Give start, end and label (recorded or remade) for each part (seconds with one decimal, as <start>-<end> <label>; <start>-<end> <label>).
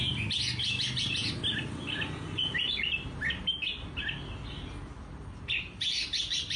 0.0-6.6 recorded